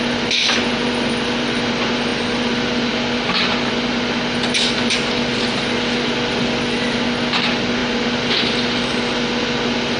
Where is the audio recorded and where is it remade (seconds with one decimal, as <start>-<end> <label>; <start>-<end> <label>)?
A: 0.0-10.0 recorded